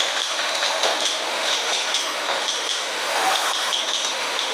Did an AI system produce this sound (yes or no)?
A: yes